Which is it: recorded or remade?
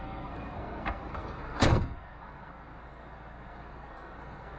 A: remade